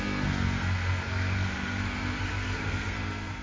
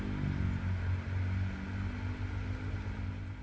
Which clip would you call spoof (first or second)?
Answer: first